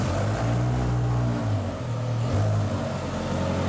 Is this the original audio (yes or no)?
yes